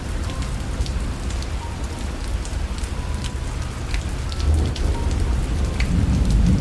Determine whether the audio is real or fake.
real